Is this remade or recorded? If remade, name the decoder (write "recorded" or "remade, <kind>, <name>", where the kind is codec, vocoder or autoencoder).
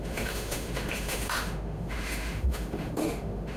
remade, autoencoder, DAC-VAE